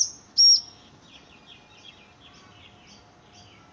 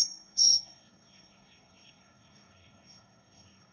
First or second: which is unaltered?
first